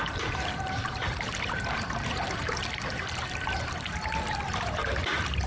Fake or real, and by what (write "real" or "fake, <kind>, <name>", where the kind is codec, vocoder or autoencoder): fake, vocoder, BigVGAN v2